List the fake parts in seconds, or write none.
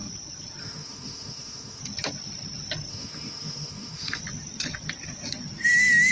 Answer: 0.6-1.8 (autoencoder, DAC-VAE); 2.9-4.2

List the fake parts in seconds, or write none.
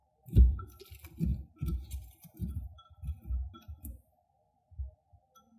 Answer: 0.0-0.8 (vocoder, BigVGAN v2); 1.3-4.7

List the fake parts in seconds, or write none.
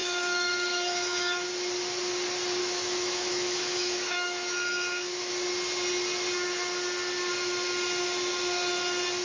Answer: 0.0-1.5 (autoencoder, DAC-VAE); 2.6-5.3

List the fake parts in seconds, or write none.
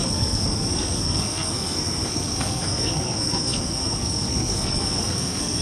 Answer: 0.0-5.6 (codec, SNAC)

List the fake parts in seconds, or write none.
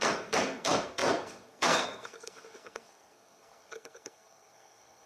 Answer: 0.0-5.1 (codec, SNAC)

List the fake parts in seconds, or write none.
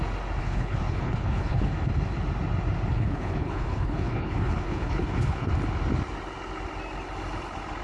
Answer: 0.4-1.7 (codec, HILCodec); 2.9-5.5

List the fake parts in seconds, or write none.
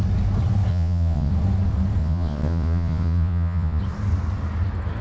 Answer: 0.7-1.3 (vocoder, Vocos); 2.0-3.8